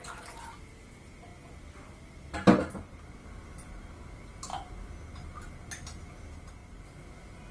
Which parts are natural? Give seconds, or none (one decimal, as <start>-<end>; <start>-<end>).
0.0-7.5